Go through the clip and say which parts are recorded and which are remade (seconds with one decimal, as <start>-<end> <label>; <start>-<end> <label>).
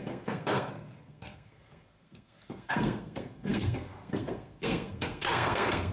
0.0-5.9 remade